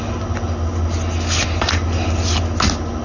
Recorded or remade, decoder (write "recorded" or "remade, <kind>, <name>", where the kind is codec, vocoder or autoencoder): recorded